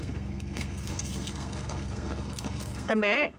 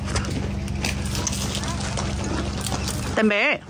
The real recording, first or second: second